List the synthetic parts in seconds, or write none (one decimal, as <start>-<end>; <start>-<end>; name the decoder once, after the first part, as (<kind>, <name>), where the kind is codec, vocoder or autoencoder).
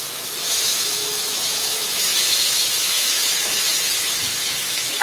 0.0-5.0 (autoencoder, DAC-VAE)